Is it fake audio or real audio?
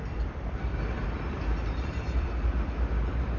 fake